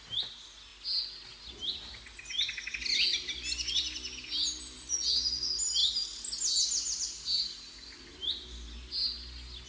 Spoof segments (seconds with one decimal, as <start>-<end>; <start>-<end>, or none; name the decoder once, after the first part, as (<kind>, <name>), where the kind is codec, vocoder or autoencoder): none